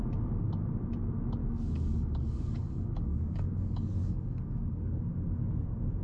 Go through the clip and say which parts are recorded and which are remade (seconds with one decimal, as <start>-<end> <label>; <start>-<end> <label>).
0.0-1.4 recorded; 1.4-5.0 remade; 5.0-6.0 recorded